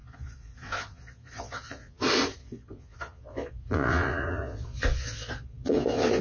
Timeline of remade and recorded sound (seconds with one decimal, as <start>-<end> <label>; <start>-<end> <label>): 0.0-2.0 remade; 2.0-2.4 recorded; 2.4-6.2 remade